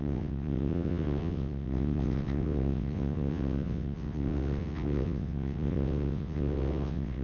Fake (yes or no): yes